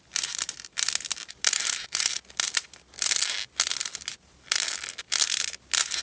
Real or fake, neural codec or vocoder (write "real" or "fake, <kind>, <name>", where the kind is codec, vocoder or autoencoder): real